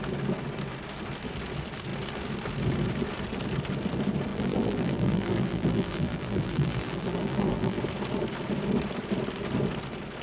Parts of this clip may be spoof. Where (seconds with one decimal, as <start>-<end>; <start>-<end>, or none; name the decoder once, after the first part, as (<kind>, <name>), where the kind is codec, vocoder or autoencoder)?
4.3-7.8 (vocoder, BigVGAN v2)